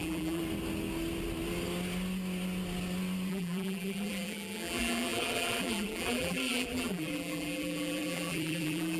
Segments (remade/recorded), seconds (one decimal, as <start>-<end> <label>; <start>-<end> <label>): 0.0-0.4 remade; 0.4-3.3 recorded; 3.3-9.0 remade